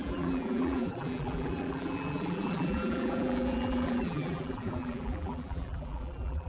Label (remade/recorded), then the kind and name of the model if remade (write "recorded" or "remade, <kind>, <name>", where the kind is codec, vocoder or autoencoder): remade, vocoder, BigVGAN v2